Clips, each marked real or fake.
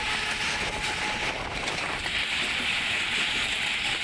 real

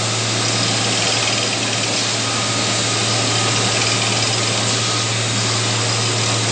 real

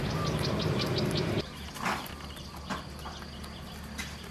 real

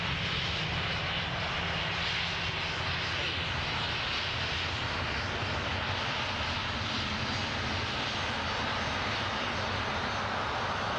real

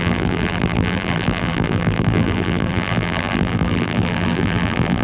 fake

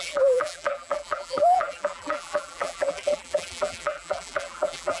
fake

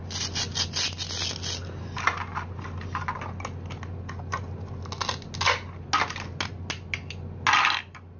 real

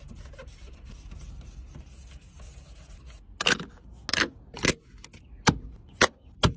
real